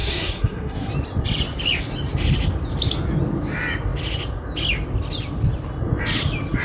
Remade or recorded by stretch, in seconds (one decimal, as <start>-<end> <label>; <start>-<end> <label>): 0.0-0.9 remade; 0.9-6.6 recorded